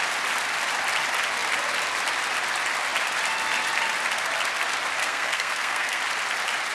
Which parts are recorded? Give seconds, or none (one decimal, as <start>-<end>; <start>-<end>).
0.0-5.0; 6.0-6.7